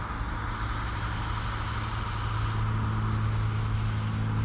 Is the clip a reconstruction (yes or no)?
no